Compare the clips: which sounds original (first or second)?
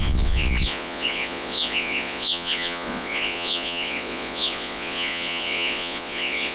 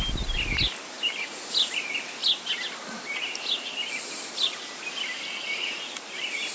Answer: second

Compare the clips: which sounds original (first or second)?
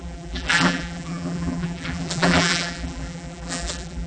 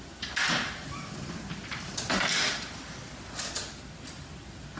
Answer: second